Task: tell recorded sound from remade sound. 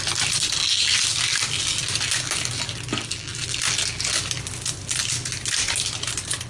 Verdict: recorded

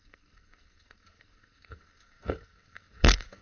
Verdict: remade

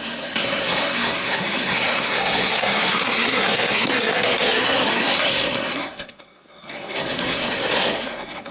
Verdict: remade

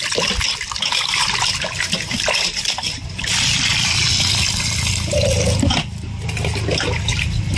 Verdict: recorded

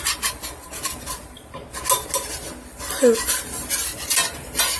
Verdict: recorded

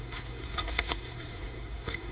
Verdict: remade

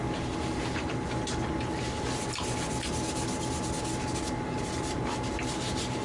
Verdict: recorded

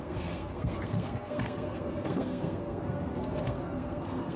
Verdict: remade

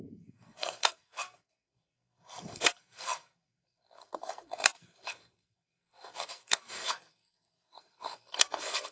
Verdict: remade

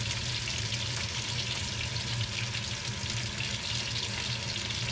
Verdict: recorded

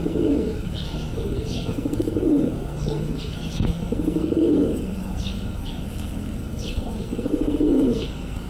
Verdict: remade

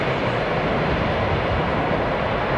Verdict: recorded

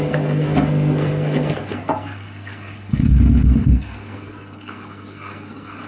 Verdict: remade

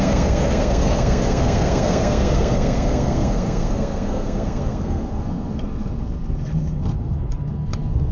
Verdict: remade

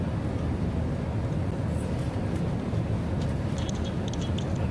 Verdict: recorded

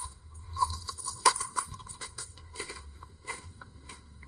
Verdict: remade